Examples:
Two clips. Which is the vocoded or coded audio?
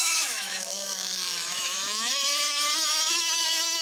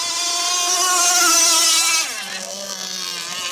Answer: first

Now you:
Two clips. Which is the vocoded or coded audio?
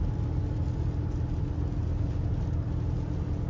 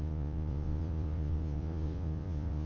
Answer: second